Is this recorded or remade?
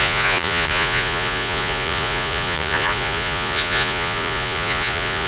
remade